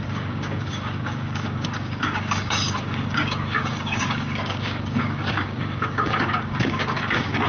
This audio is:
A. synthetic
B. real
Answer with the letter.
A